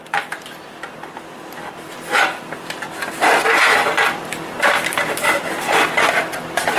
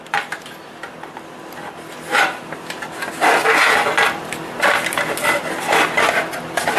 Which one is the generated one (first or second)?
first